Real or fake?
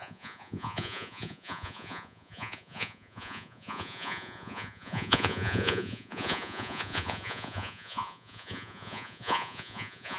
fake